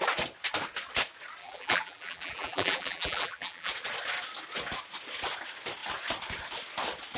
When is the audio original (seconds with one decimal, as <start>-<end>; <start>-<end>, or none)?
0.0-1.4; 3.7-7.2

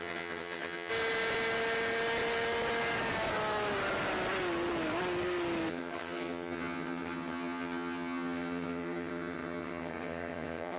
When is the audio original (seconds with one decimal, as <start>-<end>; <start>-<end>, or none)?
0.9-5.7

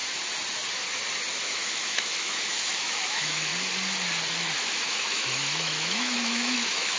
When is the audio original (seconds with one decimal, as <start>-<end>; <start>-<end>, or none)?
0.0-1.3; 3.5-4.5

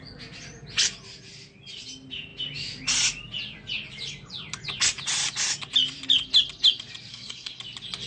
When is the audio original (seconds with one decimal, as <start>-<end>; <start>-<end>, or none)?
0.0-7.1; 7.6-8.1

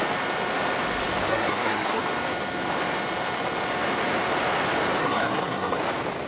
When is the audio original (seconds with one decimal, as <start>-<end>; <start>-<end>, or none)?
0.0-1.3; 2.0-5.0; 5.8-6.3

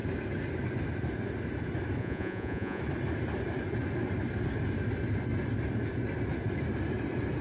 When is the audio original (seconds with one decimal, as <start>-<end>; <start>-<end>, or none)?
0.0-2.0; 2.8-7.4

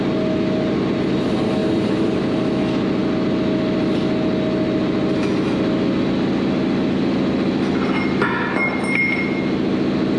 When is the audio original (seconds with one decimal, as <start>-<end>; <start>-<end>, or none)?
0.0-1.6; 2.2-10.2